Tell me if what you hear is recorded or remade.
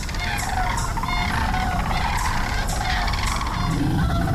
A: recorded